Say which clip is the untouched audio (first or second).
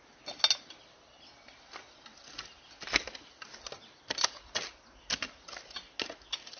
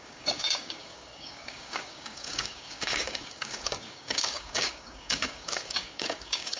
first